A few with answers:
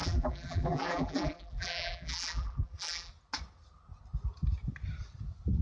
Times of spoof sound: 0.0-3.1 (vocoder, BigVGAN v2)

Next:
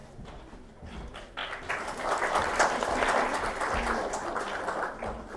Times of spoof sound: 0.0-1.4 (vocoder, BigVGAN v2); 4.6-5.4

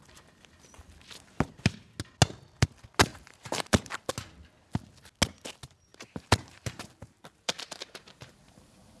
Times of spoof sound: 3.1-4.1 (vocoder, BigVGAN v2); 5.9-9.0